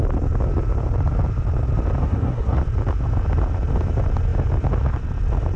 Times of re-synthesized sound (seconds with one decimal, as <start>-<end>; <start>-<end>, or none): 2.0-2.6